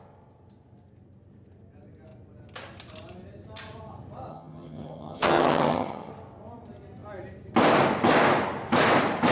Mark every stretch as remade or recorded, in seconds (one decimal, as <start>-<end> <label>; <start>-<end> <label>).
0.0-4.3 recorded; 4.3-6.1 remade; 6.1-9.3 recorded